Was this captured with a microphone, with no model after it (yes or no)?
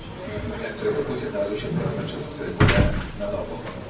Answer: yes